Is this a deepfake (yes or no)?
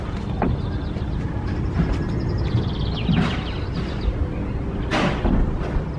no